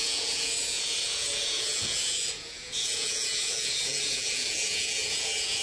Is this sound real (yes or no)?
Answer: no